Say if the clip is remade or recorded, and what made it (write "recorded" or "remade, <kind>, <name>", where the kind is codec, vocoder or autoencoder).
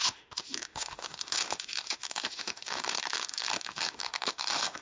remade, autoencoder, DAC-VAE